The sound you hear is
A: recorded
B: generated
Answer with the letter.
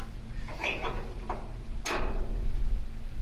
A